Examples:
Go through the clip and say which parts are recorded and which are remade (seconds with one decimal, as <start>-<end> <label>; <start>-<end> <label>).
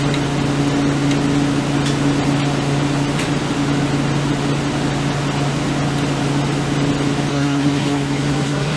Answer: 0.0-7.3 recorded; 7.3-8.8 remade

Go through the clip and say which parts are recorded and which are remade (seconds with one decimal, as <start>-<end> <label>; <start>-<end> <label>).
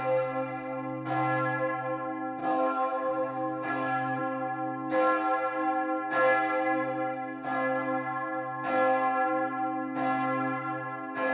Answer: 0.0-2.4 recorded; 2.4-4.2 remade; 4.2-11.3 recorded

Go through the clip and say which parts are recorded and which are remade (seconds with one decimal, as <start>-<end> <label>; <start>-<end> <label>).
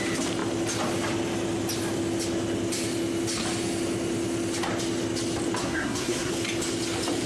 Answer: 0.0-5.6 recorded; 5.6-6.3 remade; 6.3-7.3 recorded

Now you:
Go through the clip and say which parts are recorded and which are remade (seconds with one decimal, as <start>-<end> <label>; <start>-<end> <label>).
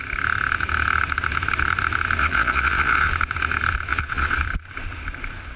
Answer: 0.0-2.2 recorded; 2.2-3.1 remade; 3.1-3.9 recorded; 3.9-4.4 remade; 4.4-5.6 recorded